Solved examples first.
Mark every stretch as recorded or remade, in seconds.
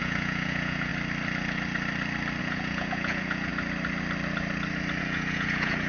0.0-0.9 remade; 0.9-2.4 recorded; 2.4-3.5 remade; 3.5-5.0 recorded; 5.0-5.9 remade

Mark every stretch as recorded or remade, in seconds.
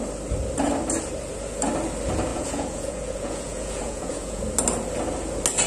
0.0-2.3 recorded; 2.3-4.4 remade; 4.4-5.7 recorded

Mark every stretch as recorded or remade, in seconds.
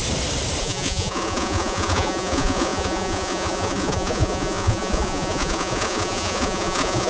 0.0-0.6 recorded; 0.6-7.1 remade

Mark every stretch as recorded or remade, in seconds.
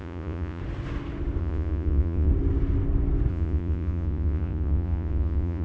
0.0-0.6 remade; 0.6-1.4 recorded; 1.4-2.3 remade; 2.3-3.3 recorded; 3.3-5.6 remade